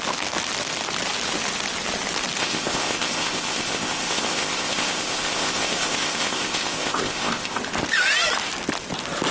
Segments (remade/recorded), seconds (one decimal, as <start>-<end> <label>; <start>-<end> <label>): 0.0-2.4 recorded; 2.4-7.6 remade; 7.6-9.3 recorded